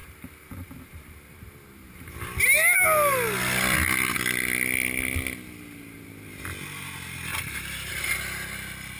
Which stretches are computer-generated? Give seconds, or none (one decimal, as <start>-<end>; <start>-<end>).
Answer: 0.0-2.2; 7.3-7.9